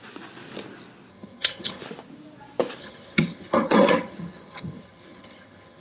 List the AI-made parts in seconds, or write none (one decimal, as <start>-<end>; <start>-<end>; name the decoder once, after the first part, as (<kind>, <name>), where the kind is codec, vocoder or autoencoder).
1.1-1.8 (vocoder, HiFi-GAN); 2.8-5.8